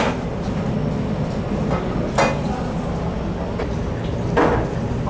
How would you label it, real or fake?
real